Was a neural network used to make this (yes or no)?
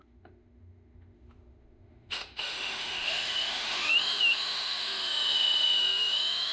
yes